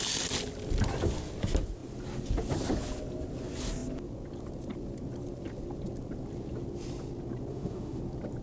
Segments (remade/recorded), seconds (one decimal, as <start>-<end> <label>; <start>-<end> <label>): 0.0-7.5 recorded; 7.5-8.0 remade; 8.0-8.4 recorded